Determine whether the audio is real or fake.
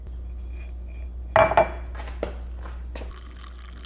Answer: real